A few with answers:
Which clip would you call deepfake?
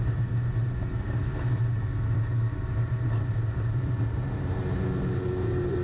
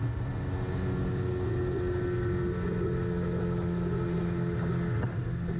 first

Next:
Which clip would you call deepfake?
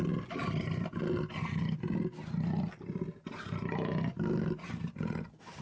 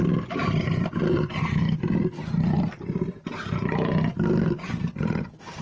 second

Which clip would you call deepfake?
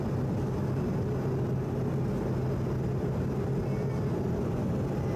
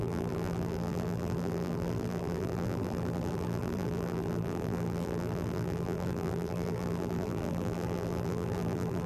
second